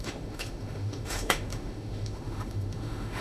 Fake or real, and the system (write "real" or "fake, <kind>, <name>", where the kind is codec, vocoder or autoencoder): fake, autoencoder, DAC-VAE